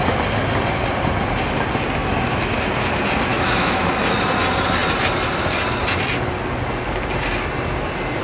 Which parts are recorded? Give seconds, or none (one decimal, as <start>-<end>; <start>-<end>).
0.0-3.3; 3.9-8.2